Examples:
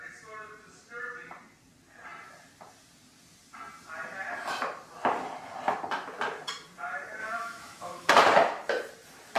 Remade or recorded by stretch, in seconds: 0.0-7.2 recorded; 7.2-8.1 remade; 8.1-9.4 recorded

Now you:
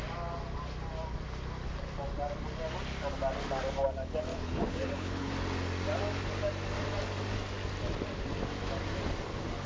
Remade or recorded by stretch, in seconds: 0.0-4.3 recorded; 4.3-5.3 remade; 5.3-9.7 recorded

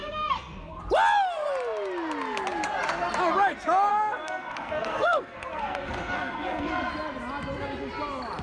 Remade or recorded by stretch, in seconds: 0.0-0.8 remade; 0.8-3.9 recorded; 3.9-6.9 remade; 6.9-8.4 recorded

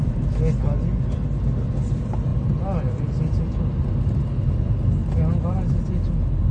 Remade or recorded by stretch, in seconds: 0.0-6.5 recorded

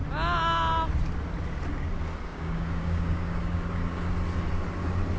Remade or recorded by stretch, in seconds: 0.0-2.3 recorded; 2.3-4.1 remade; 4.1-5.2 recorded

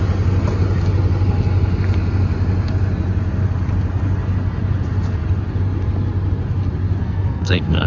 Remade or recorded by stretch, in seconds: 0.0-7.0 recorded; 7.0-7.9 remade